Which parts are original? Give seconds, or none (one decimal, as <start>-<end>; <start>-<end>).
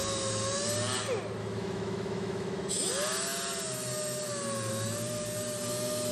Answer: 0.0-1.4; 2.9-6.1